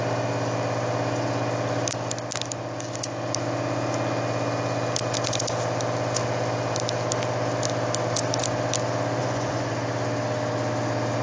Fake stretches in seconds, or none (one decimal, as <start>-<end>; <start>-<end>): 9.2-9.7